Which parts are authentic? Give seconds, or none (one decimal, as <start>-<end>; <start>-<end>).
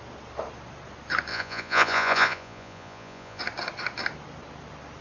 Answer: 0.0-1.3; 3.4-5.0